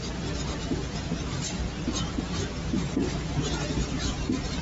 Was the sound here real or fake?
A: real